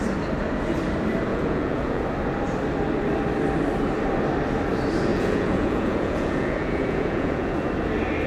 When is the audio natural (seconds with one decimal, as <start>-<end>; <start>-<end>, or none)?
0.0-1.3; 2.0-5.1; 7.7-8.3